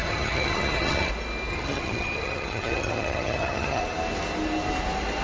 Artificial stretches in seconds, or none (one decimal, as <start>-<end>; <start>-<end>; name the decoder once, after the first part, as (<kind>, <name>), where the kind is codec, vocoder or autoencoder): 0.0-1.1 (vocoder, HiFi-GAN); 1.5-3.8

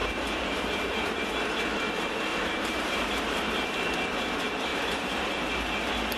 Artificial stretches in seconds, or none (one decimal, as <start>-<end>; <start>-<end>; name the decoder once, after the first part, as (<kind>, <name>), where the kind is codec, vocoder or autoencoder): 0.0-1.3 (vocoder, BigVGAN v2); 2.3-3.7; 4.7-5.3

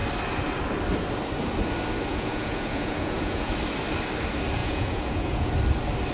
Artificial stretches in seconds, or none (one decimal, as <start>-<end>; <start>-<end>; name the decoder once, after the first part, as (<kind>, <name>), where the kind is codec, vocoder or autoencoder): 2.1-3.5 (vocoder, Vocos); 4.6-5.5

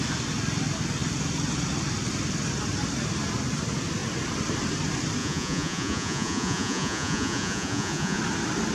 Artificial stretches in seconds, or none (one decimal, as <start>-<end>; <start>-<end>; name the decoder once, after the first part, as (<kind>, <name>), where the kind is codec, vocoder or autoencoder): 5.2-8.2 (vocoder, Vocos)

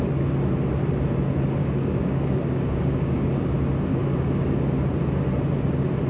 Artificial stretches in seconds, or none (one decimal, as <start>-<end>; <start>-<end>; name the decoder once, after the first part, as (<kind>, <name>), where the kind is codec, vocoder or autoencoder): 1.6-3.5 (codec, DAC); 3.9-4.9

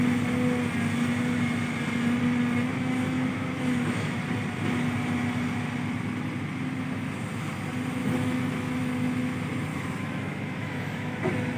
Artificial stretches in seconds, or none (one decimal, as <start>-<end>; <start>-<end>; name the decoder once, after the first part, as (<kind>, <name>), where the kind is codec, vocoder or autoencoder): 2.7-4.2 (autoencoder, DAC-VAE); 8.0-8.8; 9.7-11.2

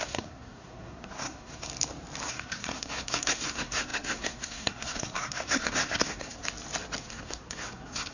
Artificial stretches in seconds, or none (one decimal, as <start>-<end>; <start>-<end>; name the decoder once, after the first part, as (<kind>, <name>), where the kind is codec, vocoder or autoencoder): 0.0-1.7 (codec, SNAC); 2.3-6.4; 7.0-8.1

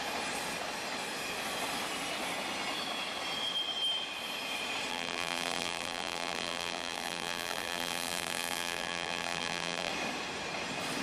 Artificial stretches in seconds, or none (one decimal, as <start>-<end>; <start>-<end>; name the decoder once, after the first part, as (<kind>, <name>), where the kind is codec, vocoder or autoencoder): 4.9-9.9 (vocoder, BigVGAN v2)